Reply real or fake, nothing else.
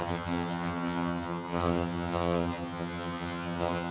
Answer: fake